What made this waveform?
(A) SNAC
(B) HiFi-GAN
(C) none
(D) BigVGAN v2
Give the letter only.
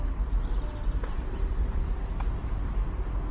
C